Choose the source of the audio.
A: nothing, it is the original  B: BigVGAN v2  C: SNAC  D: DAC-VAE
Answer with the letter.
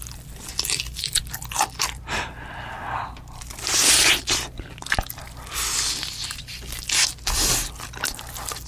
A